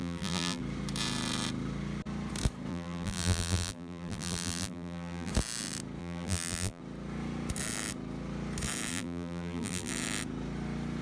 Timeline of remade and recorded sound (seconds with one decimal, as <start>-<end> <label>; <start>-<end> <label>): 0.0-0.6 remade; 0.6-2.7 recorded; 2.7-5.3 remade; 5.3-6.0 recorded; 6.0-6.8 remade; 6.8-8.9 recorded; 8.9-9.9 remade; 9.9-11.0 recorded